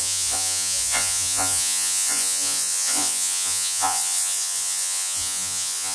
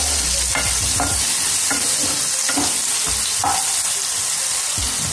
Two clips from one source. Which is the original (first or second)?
second